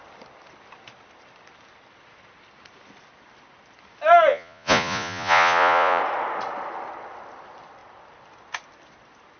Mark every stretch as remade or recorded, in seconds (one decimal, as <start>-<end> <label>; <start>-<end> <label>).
0.0-4.3 recorded; 4.3-6.0 remade; 6.0-9.4 recorded